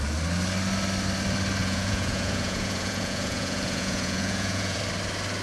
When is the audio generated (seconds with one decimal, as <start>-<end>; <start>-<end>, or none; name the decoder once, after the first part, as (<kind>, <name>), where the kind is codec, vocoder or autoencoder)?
1.6-4.8 (vocoder, Vocos)